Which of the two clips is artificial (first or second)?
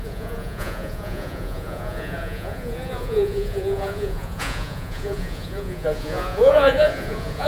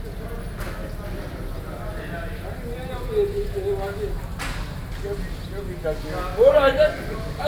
first